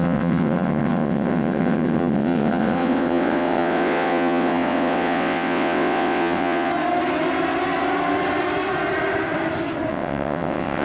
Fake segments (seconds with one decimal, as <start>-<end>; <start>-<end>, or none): 0.0-6.7; 9.9-10.8